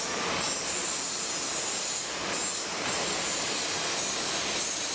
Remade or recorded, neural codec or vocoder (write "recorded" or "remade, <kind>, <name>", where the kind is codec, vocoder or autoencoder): recorded